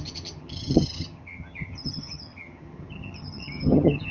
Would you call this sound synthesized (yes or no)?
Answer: yes